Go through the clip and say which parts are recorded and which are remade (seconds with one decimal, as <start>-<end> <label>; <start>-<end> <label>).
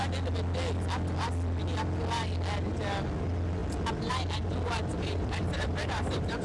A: 0.0-4.9 recorded; 4.9-6.4 remade